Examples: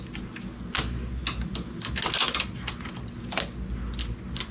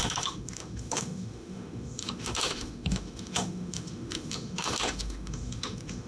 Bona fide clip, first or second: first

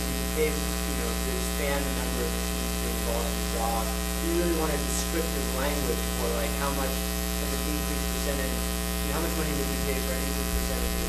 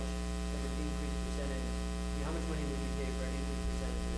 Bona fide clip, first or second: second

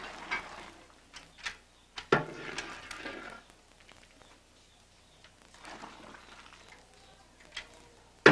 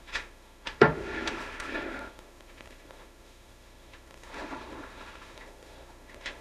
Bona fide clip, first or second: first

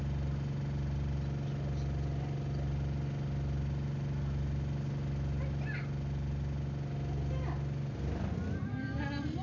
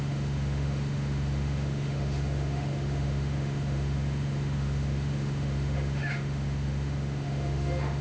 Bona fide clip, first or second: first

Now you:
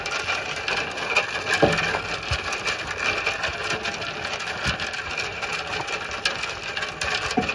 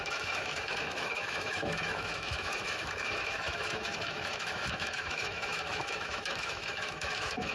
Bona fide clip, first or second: first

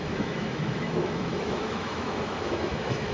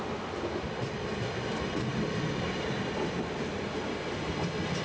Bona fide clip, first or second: second